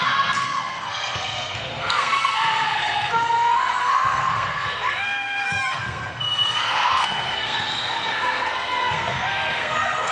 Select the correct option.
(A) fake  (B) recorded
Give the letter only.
A